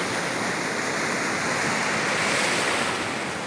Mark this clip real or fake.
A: real